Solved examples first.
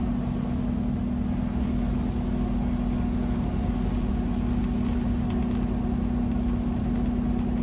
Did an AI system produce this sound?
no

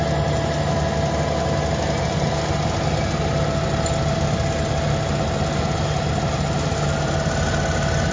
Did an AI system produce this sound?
no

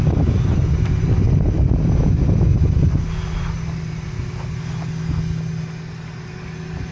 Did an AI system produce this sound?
no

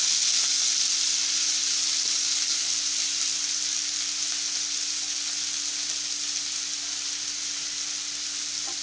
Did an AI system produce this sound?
no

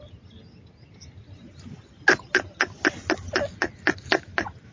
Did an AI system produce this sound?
no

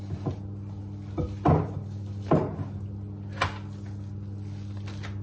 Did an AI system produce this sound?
no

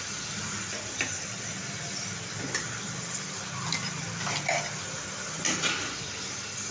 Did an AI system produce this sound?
no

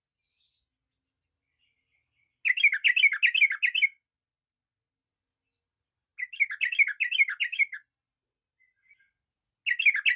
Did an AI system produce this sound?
no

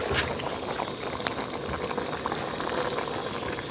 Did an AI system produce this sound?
no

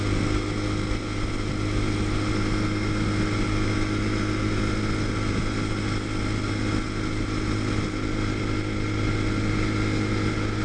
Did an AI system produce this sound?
no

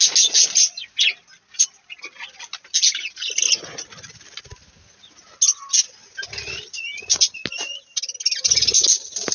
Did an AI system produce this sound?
no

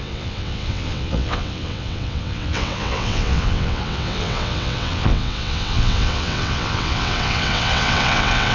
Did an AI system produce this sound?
yes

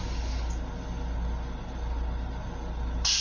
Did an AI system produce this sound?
no